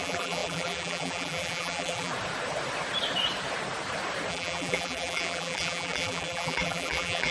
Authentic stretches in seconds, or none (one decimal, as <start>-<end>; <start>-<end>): 2.1-4.3